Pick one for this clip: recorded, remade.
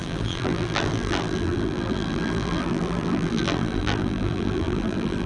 remade